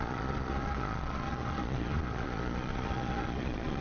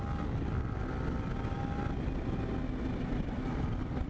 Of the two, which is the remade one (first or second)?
first